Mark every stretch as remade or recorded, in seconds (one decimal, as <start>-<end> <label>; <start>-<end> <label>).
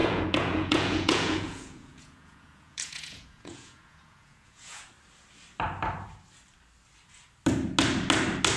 0.0-4.9 remade; 4.9-8.6 recorded